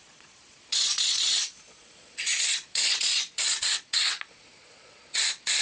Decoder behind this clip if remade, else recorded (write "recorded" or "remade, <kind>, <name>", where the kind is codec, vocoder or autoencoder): remade, vocoder, Vocos